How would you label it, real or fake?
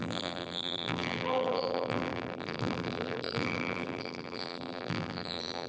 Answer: fake